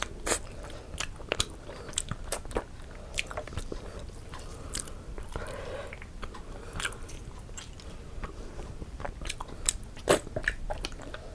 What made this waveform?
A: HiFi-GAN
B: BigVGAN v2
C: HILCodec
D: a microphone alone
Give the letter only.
B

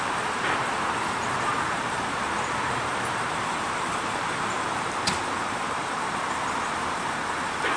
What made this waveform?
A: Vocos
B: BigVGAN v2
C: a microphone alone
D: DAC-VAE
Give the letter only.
B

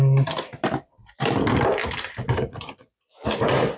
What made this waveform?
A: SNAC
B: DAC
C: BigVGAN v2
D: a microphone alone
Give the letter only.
C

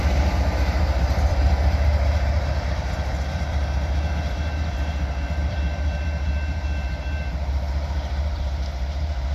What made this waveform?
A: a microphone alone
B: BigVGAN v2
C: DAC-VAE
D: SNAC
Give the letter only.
B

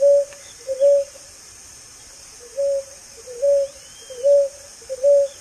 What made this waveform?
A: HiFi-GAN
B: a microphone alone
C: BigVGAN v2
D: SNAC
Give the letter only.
B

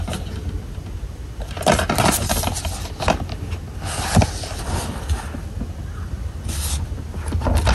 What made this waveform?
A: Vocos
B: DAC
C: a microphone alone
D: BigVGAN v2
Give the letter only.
C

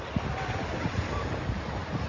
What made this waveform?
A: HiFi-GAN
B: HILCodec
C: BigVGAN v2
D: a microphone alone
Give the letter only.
D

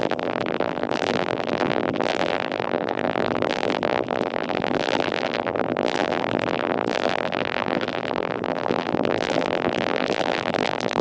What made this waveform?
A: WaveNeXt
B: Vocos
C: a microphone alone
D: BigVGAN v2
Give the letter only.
D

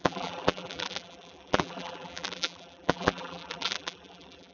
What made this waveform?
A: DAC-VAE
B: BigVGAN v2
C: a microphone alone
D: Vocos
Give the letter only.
B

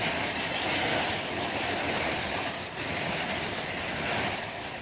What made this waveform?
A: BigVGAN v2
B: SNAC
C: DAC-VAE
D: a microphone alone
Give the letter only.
A